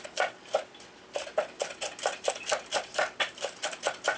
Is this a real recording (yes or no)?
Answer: yes